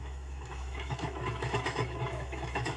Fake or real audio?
fake